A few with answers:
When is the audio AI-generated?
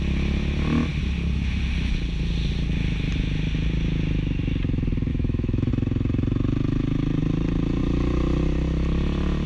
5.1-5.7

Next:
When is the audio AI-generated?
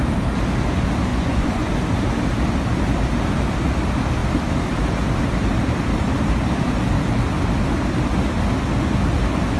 1.1-1.7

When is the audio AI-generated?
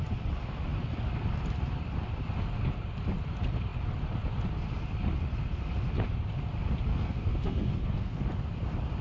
6.9-8.2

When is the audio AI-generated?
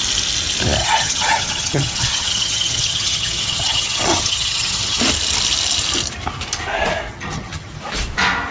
0.8-5.0; 7.1-7.8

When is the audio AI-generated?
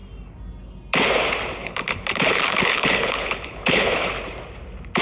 1.6-4.1